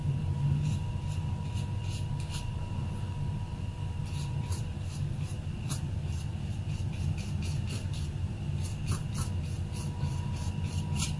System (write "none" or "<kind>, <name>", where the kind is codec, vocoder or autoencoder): none